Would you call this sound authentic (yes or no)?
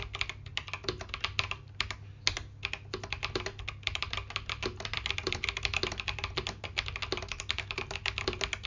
yes